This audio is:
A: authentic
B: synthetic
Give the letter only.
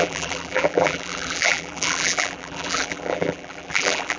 B